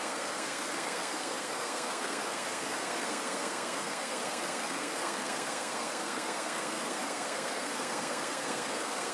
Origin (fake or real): fake